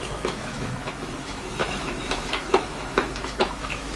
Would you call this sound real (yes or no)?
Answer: no